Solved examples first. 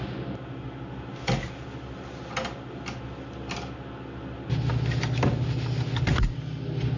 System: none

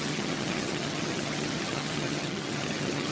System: vocoder, HiFi-GAN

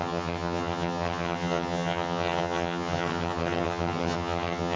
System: vocoder, HiFi-GAN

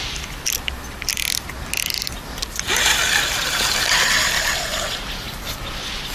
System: none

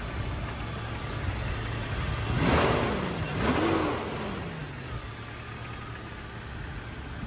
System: none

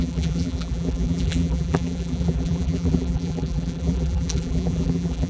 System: vocoder, BigVGAN v2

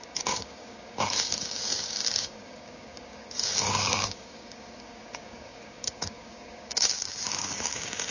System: codec, DAC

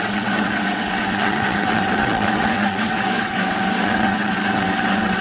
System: vocoder, WaveNeXt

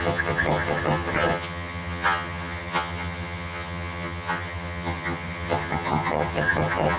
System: vocoder, HiFi-GAN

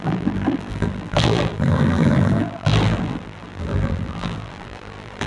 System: vocoder, BigVGAN v2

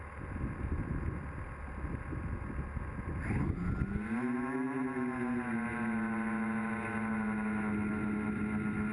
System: none